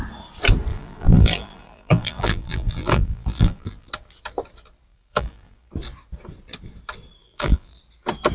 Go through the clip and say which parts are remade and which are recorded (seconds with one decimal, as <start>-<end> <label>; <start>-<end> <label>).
0.0-0.7 recorded; 0.7-3.9 remade; 3.9-4.9 recorded; 4.9-5.7 remade; 5.7-7.2 recorded; 7.2-7.8 remade; 7.8-8.3 recorded